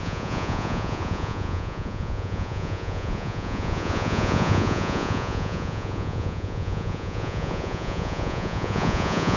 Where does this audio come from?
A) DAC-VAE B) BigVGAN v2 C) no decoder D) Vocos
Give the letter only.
D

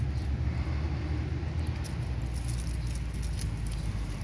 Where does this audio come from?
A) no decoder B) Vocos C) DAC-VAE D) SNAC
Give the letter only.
A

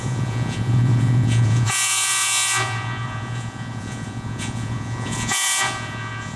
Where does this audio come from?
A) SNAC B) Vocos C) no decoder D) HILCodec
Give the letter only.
B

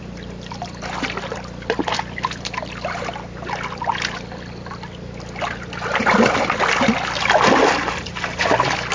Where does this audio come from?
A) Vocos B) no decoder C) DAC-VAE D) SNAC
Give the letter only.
B